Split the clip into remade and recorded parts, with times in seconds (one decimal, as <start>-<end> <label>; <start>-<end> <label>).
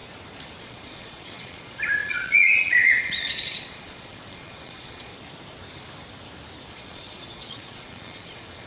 0.0-0.6 recorded; 0.6-5.1 remade; 5.1-6.7 recorded; 6.7-8.7 remade